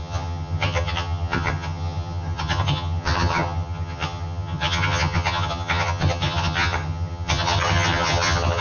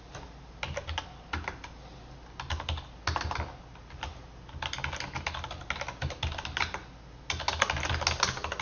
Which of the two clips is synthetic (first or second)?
first